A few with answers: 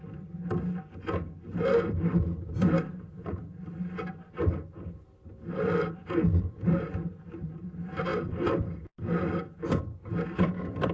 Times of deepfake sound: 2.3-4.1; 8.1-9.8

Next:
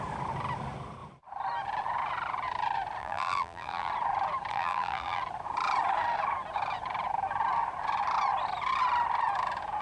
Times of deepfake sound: 3.0-3.9; 4.5-5.2

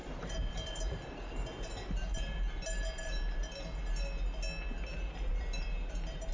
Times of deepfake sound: 0.0-3.8; 4.9-6.3

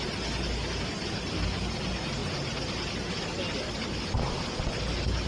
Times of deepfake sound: none

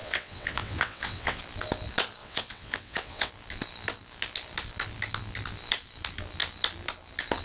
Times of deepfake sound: 0.0-1.4; 2.2-3.3

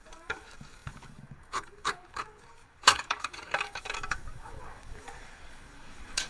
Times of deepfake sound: 0.0-6.3

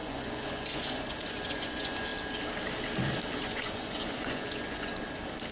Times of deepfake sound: 0.0-2.1; 3.4-4.9